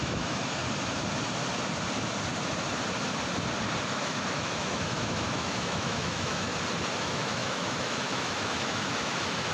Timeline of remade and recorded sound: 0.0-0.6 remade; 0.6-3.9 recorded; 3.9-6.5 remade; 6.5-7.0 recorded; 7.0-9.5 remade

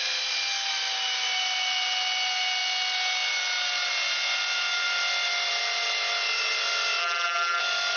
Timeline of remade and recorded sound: 0.0-7.0 recorded; 7.0-7.6 remade; 7.6-8.0 recorded

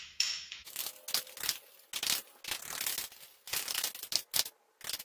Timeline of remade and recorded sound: 0.0-0.8 remade; 0.8-3.5 recorded; 3.5-3.9 remade; 3.9-5.0 recorded